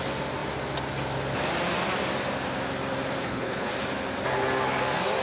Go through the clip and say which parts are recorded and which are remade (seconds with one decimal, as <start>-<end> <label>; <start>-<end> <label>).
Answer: 0.0-3.2 recorded; 3.2-3.7 remade; 3.7-5.2 recorded